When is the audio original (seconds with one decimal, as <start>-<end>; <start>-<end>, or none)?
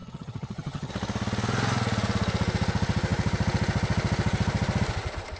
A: 0.9-5.4